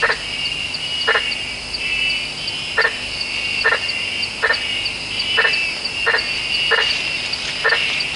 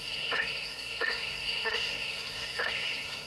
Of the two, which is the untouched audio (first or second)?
first